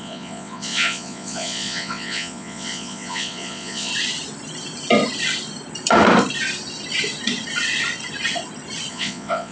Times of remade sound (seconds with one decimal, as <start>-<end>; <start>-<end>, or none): 0.0-3.9; 8.9-9.5